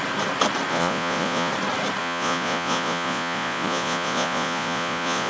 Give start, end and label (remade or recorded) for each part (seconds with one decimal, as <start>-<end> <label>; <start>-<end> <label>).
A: 0.0-0.7 recorded; 0.7-1.5 remade; 1.5-2.0 recorded; 2.0-5.3 remade